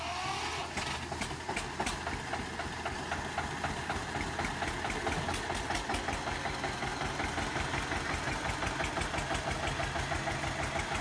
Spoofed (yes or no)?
no